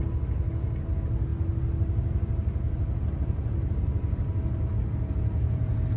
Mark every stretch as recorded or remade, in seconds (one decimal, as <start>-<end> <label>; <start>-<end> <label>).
0.0-6.0 recorded